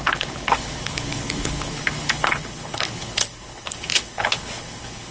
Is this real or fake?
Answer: fake